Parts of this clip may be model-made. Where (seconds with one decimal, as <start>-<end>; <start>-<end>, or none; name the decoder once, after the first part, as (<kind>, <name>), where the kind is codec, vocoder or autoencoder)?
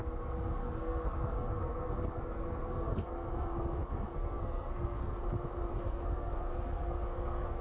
0.6-5.2 (codec, SNAC); 5.7-7.6